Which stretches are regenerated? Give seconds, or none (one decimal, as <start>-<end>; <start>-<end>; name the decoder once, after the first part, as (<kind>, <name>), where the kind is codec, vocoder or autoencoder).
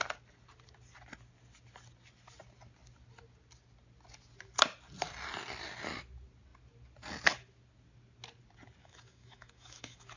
8.8-10.2 (autoencoder, DAC-VAE)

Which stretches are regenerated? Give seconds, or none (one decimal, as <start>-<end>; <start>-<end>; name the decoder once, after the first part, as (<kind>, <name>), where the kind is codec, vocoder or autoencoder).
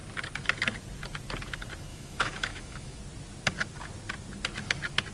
1.9-3.0 (autoencoder, DAC-VAE)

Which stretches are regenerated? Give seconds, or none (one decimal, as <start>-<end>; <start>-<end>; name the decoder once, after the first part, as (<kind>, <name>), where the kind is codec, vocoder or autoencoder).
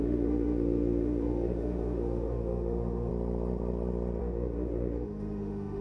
0.0-3.1 (autoencoder, DAC-VAE); 4.2-5.8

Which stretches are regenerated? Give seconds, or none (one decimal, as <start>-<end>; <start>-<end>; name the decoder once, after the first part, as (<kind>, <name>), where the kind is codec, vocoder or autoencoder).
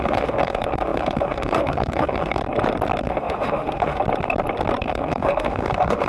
0.0-2.4 (autoencoder, DAC-VAE); 3.0-4.0; 4.8-6.1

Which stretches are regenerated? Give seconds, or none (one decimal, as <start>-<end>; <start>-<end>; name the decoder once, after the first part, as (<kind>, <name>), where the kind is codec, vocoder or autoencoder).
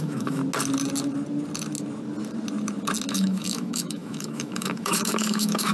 0.0-0.4 (autoencoder, DAC-VAE); 3.1-5.7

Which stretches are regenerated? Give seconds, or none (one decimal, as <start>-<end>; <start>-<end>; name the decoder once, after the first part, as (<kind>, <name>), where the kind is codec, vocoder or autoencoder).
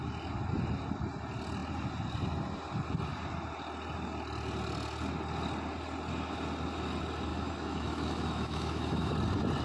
7.3-9.1 (autoencoder, DAC-VAE)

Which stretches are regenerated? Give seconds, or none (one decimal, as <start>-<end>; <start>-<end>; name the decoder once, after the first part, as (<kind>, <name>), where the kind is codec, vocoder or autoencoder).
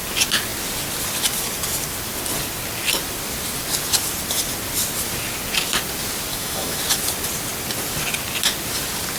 6.3-6.8 (autoencoder, DAC-VAE)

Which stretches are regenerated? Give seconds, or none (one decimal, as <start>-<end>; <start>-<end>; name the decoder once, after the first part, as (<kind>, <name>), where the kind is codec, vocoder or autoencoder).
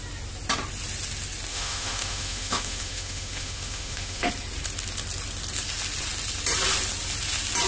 1.5-4.3 (autoencoder, DAC-VAE)